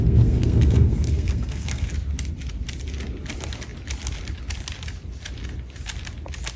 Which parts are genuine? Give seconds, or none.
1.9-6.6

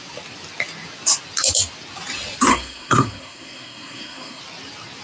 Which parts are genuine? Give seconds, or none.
0.0-2.5; 4.4-5.0

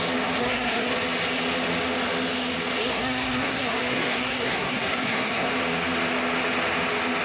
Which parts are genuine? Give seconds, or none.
0.0-0.4; 0.9-2.8; 5.5-7.2

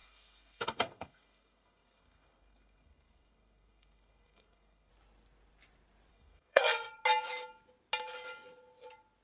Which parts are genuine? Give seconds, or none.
4.9-6.1; 7.0-9.2